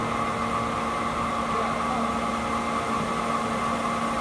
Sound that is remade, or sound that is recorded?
recorded